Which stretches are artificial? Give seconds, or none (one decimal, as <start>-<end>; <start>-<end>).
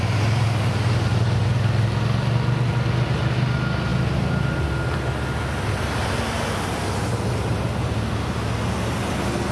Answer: none